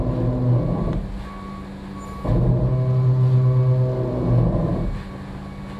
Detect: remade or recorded recorded